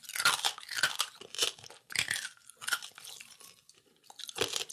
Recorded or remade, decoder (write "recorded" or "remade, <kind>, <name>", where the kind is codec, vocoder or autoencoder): recorded